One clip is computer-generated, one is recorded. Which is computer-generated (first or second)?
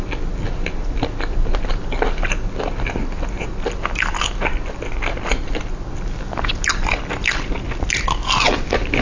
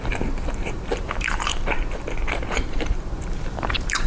second